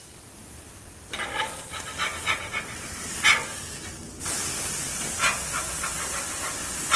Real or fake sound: real